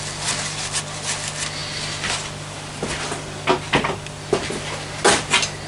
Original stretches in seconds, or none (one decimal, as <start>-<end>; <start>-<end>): 0.0-5.7